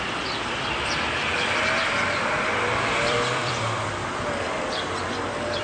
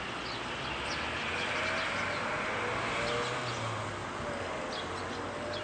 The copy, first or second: first